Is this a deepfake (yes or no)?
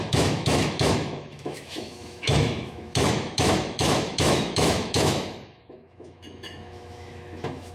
yes